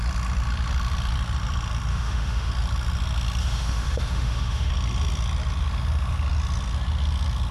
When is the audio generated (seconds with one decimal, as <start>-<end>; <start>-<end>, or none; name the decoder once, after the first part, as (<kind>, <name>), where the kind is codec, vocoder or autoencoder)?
1.9-2.5 (autoencoder, DAC-VAE); 3.4-4.7